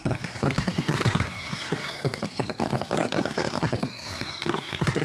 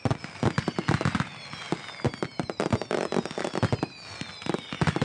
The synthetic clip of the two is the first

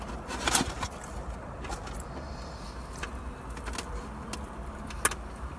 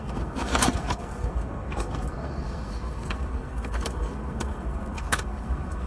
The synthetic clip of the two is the second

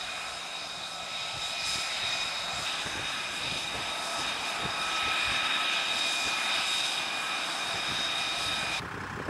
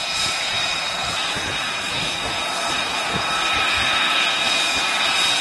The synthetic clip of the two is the second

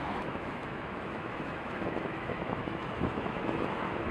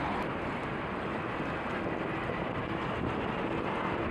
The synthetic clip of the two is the first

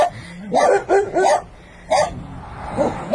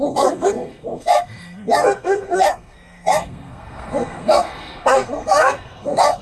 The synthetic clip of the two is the second